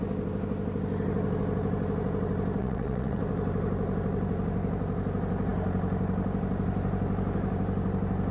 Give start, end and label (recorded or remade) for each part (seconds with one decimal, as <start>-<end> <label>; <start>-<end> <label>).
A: 0.0-2.6 recorded; 2.6-3.2 remade; 3.2-8.3 recorded